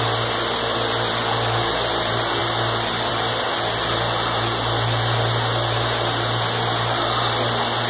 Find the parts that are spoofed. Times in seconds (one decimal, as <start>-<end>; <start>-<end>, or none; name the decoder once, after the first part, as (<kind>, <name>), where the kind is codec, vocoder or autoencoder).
none